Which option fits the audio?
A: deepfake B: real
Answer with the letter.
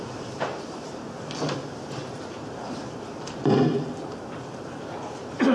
A